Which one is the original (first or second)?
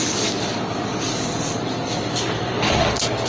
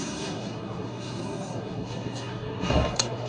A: first